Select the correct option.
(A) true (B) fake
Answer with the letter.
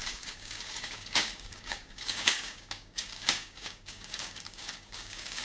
B